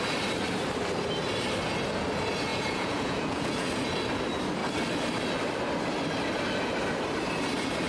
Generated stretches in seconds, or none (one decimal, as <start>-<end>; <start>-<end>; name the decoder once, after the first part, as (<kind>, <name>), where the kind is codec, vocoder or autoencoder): 2.5-3.7 (vocoder, Vocos)

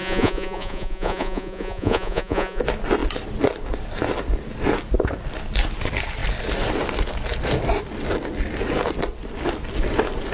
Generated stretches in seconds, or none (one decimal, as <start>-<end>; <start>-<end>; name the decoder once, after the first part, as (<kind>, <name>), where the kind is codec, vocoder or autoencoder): 0.0-2.6 (vocoder, Vocos)

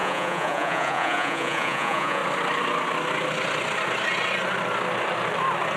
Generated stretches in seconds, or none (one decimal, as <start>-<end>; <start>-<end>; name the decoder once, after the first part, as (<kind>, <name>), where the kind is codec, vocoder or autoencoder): 0.0-2.2 (vocoder, Vocos)

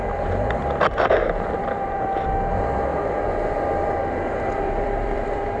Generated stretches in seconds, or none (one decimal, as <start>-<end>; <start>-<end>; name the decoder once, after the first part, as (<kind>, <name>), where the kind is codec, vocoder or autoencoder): 0.6-2.2 (vocoder, BigVGAN v2); 2.9-5.6

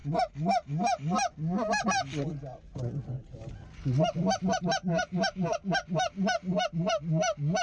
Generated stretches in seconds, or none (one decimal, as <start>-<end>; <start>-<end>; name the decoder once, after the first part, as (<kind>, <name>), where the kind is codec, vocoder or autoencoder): none